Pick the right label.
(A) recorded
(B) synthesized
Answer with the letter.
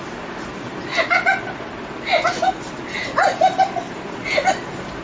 A